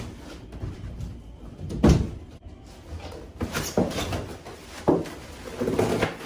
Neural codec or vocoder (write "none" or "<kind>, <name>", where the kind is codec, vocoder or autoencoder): none